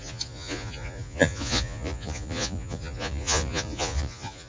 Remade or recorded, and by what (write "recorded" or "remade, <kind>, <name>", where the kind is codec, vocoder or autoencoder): remade, vocoder, Vocos